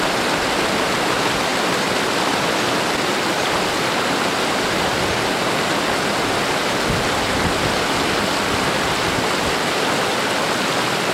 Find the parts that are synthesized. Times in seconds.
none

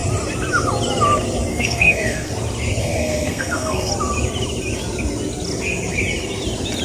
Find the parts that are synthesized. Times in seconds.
1.5-2.3 (codec, SNAC); 2.8-3.9

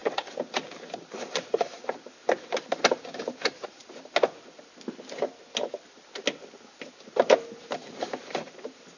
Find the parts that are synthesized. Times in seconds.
0.0-3.8 (vocoder, BigVGAN v2); 7.6-9.0

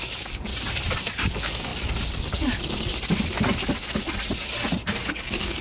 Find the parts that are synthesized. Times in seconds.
0.0-0.5 (codec, DAC); 1.2-1.7; 5.1-5.6

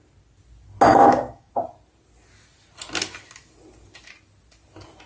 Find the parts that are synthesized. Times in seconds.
0.9-1.5 (codec, DAC)

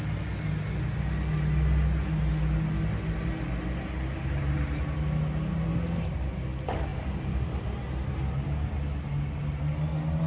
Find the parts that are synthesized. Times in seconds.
none

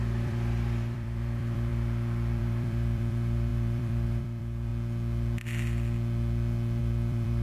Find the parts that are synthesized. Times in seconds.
0.0-1.7 (vocoder, BigVGAN v2); 2.4-4.7; 6.8-7.4

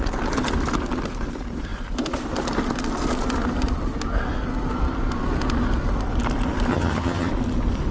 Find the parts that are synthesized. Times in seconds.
6.7-7.3 (vocoder, HiFi-GAN)